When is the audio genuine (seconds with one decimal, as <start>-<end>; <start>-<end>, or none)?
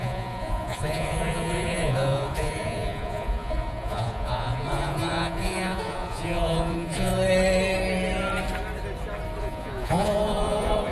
7.1-9.4